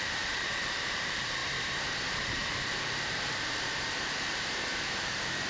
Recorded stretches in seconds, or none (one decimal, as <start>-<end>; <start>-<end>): 1.4-2.1